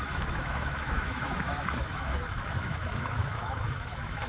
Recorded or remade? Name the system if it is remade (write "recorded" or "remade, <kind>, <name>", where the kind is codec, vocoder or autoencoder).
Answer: remade, autoencoder, DAC-VAE